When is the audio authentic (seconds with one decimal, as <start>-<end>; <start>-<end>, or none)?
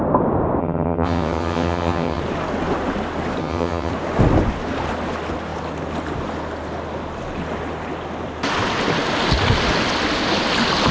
0.0-0.6; 2.2-3.4; 3.9-10.9